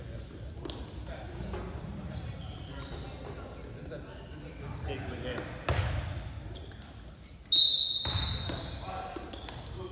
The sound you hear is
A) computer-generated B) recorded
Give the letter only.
B